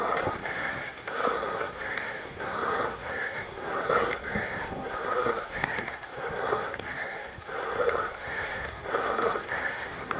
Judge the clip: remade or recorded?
remade